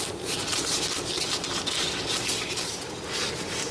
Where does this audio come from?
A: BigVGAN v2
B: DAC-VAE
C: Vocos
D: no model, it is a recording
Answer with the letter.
D